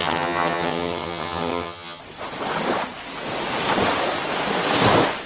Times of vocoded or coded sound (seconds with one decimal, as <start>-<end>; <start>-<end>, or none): 0.0-2.0